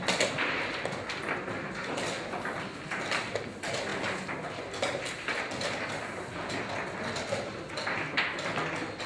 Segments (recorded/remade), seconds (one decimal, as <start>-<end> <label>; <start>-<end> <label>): 0.0-9.1 recorded